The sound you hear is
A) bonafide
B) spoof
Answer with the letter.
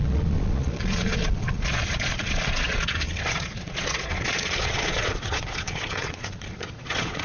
B